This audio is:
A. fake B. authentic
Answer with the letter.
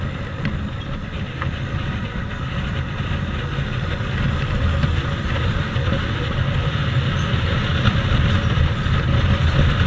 B